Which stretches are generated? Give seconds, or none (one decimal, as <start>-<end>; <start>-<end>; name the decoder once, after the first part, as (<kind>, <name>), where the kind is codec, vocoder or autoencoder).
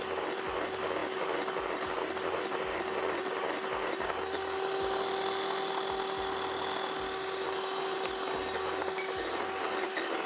none